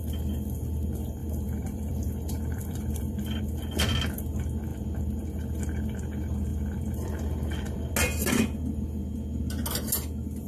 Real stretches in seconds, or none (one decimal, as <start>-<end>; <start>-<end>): 0.0-1.2; 3.4-6.5; 7.9-10.5

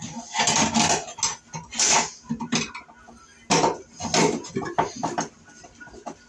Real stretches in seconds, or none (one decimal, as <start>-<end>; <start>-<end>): 0.0-6.3

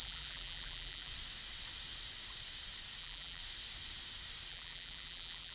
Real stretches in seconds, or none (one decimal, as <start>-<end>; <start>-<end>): 1.1-3.0; 3.4-4.5